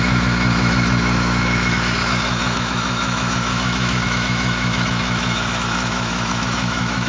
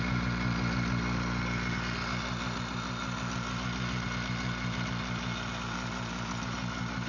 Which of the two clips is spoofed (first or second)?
first